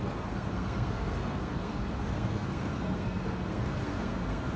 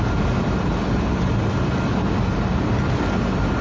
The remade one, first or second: first